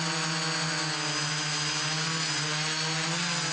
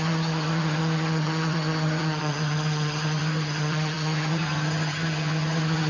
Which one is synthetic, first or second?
second